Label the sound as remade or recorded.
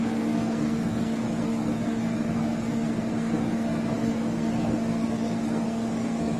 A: remade